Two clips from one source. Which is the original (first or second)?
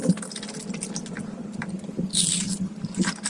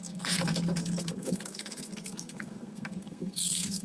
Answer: first